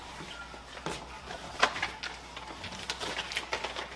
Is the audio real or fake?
real